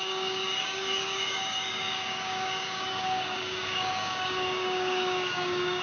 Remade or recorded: remade